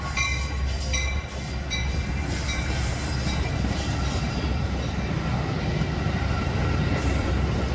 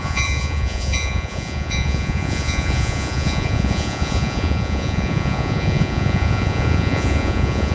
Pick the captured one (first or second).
first